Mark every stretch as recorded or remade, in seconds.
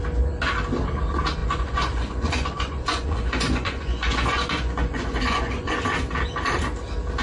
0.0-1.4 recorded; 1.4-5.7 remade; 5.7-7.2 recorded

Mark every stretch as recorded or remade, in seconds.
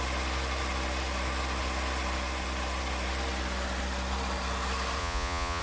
0.0-5.0 recorded; 5.0-5.6 remade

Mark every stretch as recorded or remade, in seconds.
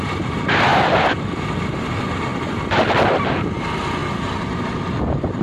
0.0-2.3 remade; 2.3-3.4 recorded; 3.4-4.0 remade; 4.0-4.8 recorded; 4.8-5.4 remade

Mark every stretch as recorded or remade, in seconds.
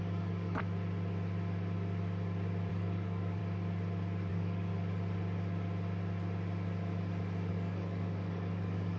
0.0-0.6 remade; 0.6-2.7 recorded; 2.7-3.4 remade; 3.4-4.3 recorded; 4.3-4.7 remade; 4.7-7.5 recorded; 7.5-9.0 remade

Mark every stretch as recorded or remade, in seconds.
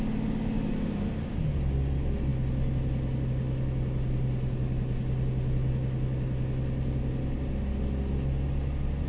0.0-9.1 recorded